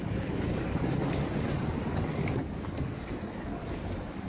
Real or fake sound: fake